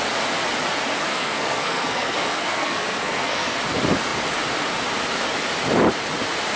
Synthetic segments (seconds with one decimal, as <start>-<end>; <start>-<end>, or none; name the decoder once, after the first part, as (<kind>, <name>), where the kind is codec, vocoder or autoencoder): 1.1-3.6 (codec, SNAC)